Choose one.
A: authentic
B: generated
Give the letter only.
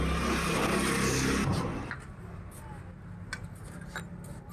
A